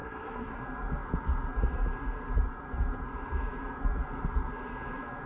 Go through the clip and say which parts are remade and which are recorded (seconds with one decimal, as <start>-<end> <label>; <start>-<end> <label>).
0.0-0.6 remade; 0.6-5.3 recorded